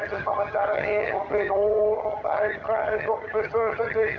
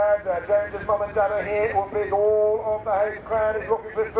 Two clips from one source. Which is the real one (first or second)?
second